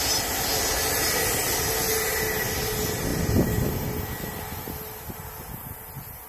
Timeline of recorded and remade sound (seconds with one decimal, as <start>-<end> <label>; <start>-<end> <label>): 0.0-6.3 recorded